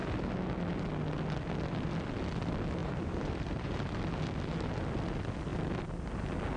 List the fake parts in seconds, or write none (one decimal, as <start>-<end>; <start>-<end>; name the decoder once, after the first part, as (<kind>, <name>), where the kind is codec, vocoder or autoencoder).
2.8-4.0 (vocoder, BigVGAN v2)